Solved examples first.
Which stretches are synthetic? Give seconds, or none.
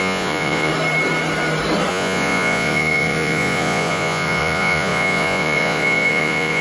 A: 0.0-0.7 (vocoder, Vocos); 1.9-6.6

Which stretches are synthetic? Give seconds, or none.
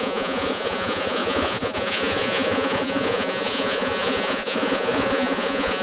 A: 0.0-5.8 (vocoder, Vocos)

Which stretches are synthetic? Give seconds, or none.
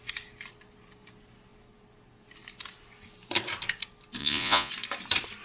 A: 4.2-4.7 (vocoder, Vocos)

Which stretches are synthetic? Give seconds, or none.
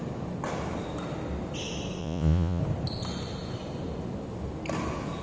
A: 2.0-2.6 (vocoder, Vocos)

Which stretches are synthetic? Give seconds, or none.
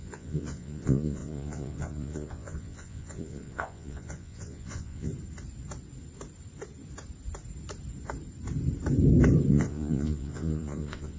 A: 0.0-5.1 (vocoder, Vocos); 9.5-11.2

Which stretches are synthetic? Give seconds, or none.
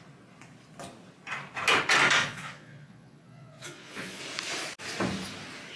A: 2.2-4.2 (vocoder, Vocos)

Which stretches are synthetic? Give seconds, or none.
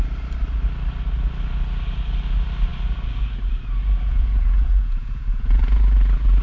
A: 4.1-5.8 (vocoder, Vocos)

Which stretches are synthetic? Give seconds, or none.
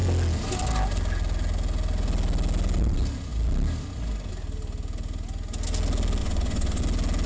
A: 6.2-6.8 (vocoder, Vocos)